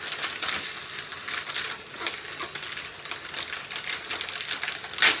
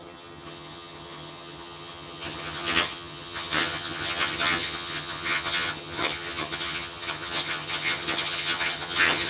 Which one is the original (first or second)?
first